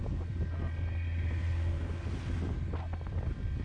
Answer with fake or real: real